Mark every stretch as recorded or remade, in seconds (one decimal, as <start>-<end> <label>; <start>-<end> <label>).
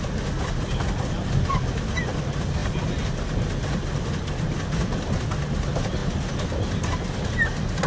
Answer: 0.0-7.9 recorded